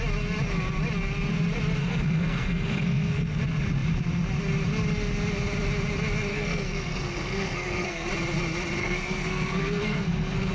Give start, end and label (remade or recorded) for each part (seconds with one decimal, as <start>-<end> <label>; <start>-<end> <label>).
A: 0.0-1.8 recorded; 1.8-3.4 remade; 3.4-6.3 recorded; 6.3-8.1 remade; 8.1-8.8 recorded; 8.8-10.5 remade